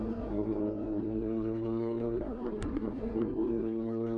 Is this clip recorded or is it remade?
remade